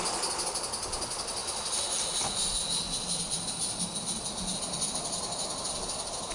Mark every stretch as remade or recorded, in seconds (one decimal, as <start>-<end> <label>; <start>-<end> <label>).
0.0-6.3 recorded